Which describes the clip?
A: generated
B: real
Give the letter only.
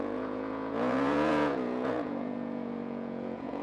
A